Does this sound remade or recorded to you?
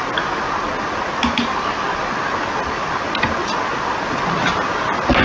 recorded